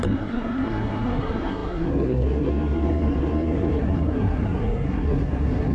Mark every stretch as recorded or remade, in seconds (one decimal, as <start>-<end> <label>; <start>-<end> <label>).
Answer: 0.0-5.7 remade